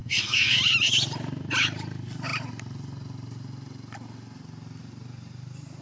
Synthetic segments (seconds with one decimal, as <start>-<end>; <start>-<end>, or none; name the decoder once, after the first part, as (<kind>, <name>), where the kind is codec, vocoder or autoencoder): 0.0-0.6 (codec, DAC)